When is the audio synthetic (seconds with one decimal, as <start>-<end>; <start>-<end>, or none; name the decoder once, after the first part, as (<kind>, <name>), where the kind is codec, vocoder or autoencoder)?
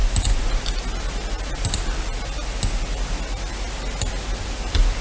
none